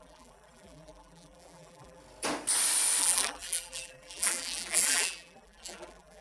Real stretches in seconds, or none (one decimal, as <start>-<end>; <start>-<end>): 2.0-3.0